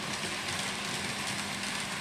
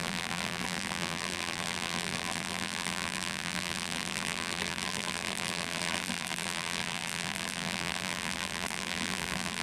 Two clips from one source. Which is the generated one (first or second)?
second